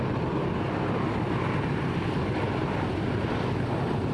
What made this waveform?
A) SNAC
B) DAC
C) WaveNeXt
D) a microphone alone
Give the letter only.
D